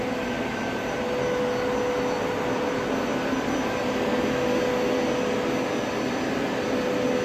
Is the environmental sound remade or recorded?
recorded